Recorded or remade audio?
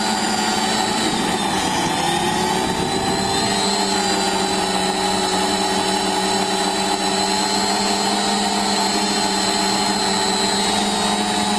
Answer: recorded